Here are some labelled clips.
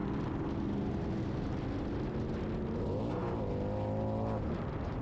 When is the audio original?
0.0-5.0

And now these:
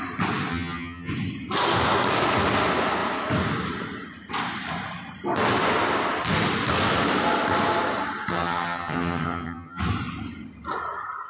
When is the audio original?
0.0-0.5; 1.1-8.3; 9.8-11.3

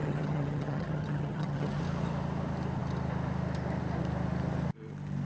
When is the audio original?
1.8-5.2

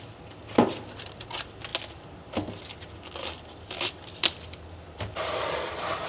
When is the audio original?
0.0-6.1

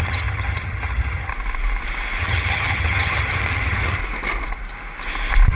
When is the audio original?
1.3-2.2; 4.0-5.5